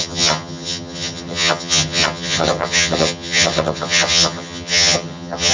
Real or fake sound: fake